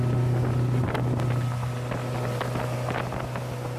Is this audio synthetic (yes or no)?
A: no